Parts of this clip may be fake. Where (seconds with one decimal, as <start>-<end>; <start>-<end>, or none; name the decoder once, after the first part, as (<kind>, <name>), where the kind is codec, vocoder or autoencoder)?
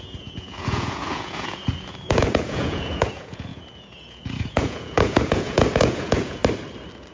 0.0-6.4 (vocoder, Vocos)